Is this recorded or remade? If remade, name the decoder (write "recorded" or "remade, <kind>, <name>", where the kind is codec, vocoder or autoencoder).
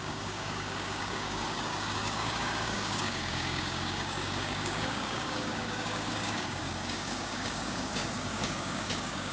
remade, codec, DAC